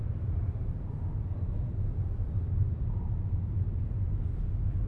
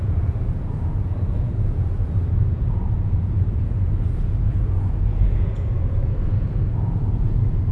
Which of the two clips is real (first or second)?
first